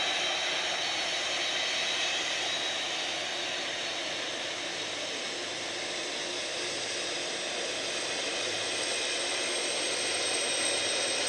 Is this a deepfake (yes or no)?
no